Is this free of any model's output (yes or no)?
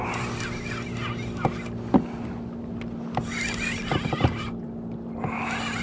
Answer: yes